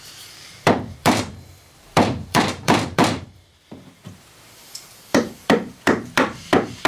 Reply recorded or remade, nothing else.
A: remade